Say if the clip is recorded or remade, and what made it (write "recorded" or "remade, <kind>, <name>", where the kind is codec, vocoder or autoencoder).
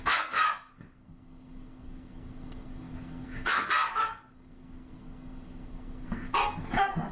remade, codec, SNAC